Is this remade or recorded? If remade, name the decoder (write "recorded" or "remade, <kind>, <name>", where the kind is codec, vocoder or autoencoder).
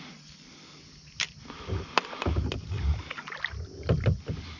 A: recorded